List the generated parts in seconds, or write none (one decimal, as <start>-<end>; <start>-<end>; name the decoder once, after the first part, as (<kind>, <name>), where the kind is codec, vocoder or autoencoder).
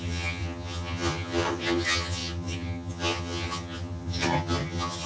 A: 0.0-5.1 (vocoder, HiFi-GAN)